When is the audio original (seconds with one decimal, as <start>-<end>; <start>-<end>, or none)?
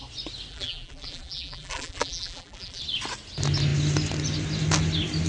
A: 0.0-0.5; 2.8-5.3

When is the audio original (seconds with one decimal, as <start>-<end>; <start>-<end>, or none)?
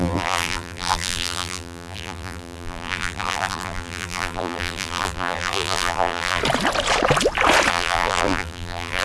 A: 6.4-7.7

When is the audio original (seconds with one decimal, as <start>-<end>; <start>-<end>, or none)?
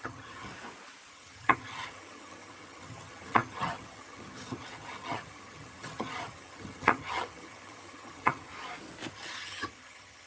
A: 0.5-1.1; 8.5-9.1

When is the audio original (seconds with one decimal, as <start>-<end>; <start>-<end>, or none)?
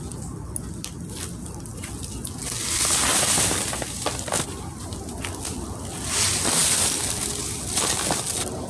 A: 0.0-8.7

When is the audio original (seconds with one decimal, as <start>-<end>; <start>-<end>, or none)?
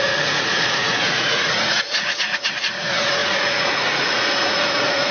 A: none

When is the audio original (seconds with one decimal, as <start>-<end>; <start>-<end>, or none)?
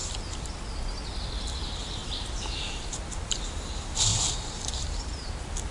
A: 0.0-2.0; 3.4-4.1; 5.3-5.7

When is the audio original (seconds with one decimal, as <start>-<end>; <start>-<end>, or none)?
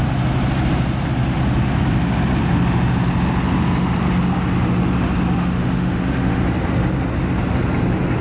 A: 0.0-5.4; 6.4-8.2